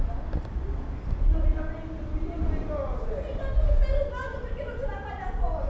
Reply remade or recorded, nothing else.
recorded